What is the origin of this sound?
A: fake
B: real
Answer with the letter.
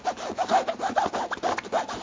B